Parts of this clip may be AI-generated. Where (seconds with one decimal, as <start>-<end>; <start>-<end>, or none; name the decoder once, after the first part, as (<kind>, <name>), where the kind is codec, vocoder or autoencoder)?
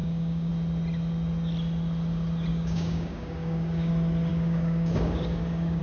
0.0-0.5 (codec, DAC); 2.5-3.9; 4.3-5.8